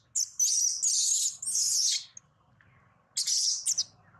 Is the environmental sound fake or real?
real